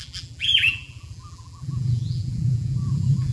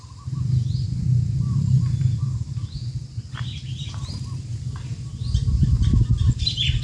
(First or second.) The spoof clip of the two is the first